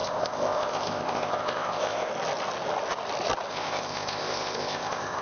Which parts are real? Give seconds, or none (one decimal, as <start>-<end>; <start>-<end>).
2.1-3.5